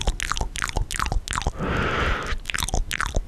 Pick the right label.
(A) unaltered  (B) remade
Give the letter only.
A